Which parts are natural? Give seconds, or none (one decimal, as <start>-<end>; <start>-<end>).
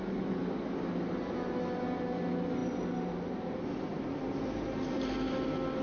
0.0-5.8